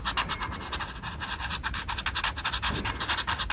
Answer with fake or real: real